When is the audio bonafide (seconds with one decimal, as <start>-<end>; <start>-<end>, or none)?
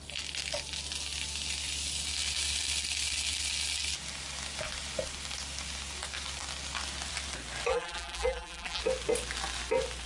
0.0-7.7; 8.8-10.1